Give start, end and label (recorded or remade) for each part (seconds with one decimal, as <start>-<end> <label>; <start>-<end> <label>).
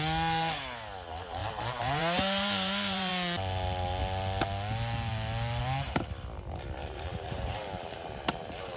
0.0-1.4 recorded; 1.4-3.1 remade; 3.1-6.8 recorded; 6.8-8.8 remade